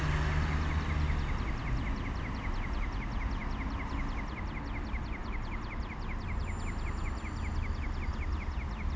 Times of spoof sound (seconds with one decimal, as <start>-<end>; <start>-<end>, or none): none